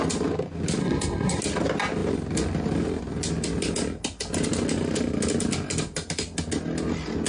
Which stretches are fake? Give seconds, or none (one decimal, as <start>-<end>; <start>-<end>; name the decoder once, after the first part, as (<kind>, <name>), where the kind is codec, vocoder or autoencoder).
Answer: 0.8-1.4 (codec, SNAC)